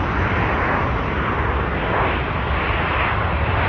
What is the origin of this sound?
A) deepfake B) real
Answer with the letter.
B